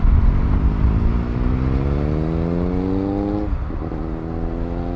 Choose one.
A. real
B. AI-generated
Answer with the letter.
A